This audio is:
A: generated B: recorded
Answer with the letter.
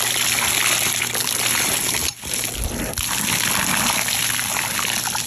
B